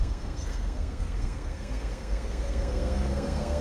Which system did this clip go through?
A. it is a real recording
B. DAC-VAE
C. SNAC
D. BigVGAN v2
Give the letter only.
C